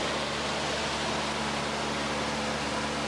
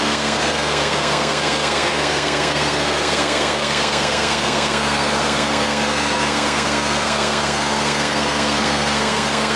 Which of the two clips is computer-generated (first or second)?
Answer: second